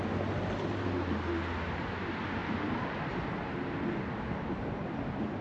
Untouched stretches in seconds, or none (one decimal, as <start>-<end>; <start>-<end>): 0.0-5.4

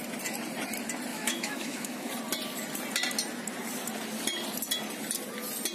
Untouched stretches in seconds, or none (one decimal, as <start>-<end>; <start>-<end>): 0.0-1.1; 2.1-5.7